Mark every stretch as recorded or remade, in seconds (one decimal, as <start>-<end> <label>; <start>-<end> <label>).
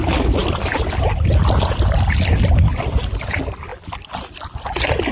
0.0-5.1 recorded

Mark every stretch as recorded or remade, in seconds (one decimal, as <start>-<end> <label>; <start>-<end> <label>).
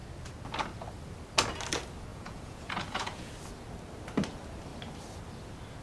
0.0-2.1 recorded; 2.1-3.3 remade; 3.3-5.8 recorded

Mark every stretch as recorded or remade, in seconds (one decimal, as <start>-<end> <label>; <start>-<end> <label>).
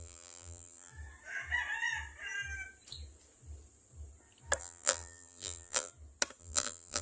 0.0-0.9 remade; 0.9-4.6 recorded; 4.6-5.9 remade; 5.9-6.4 recorded; 6.4-7.0 remade